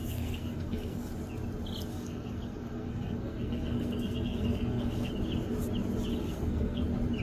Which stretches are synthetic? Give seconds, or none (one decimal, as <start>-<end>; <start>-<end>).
0.0-1.1; 1.9-5.1; 6.2-6.8